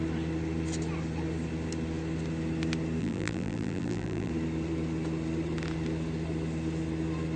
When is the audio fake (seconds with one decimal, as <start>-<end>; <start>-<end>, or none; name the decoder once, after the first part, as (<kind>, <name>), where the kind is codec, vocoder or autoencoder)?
3.0-4.3 (vocoder, BigVGAN v2)